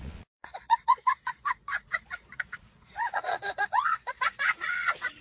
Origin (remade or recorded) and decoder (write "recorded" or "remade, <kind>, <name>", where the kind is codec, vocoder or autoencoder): remade, vocoder, Vocos